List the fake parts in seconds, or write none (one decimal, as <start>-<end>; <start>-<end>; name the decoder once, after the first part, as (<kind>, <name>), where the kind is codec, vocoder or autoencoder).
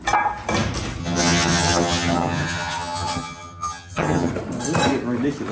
1.0-4.3 (vocoder, HiFi-GAN)